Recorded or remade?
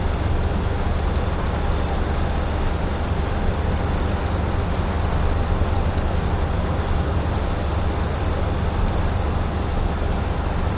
recorded